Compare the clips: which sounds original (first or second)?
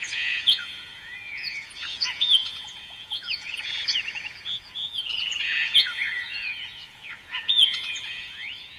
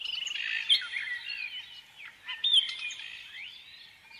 second